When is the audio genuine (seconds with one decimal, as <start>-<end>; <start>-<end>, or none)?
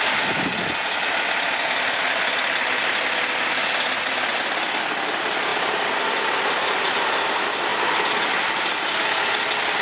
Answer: 0.0-9.8